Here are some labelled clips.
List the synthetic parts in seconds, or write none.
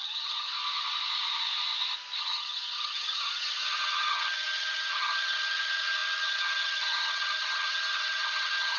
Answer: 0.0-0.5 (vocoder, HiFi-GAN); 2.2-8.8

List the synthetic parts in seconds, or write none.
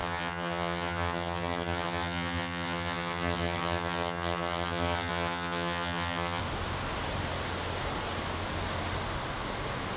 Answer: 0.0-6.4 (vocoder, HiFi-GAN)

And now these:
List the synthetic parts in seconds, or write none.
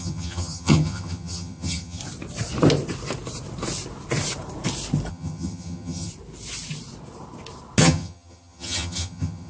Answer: 0.0-2.0 (vocoder, HiFi-GAN); 5.1-6.1; 7.8-9.5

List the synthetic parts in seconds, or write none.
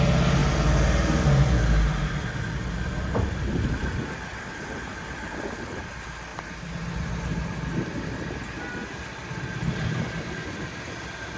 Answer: none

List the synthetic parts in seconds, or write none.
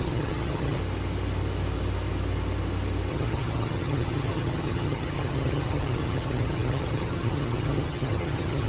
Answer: 0.0-0.8 (vocoder, HiFi-GAN); 3.1-8.7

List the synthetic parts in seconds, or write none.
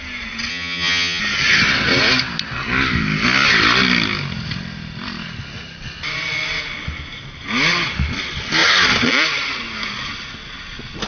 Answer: 0.5-1.2 (vocoder, HiFi-GAN)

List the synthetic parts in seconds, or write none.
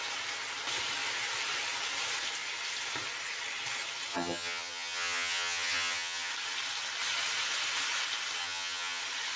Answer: 4.1-6.3 (vocoder, HiFi-GAN); 8.4-9.0